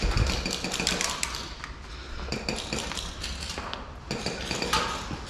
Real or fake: real